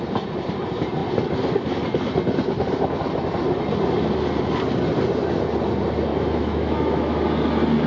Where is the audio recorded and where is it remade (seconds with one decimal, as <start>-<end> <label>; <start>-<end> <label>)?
0.0-6.1 recorded; 6.1-7.2 remade; 7.2-7.9 recorded